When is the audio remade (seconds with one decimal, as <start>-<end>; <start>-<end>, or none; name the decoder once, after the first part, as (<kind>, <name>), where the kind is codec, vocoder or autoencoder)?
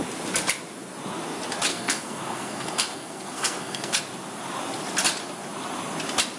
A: 1.7-4.0 (codec, SNAC)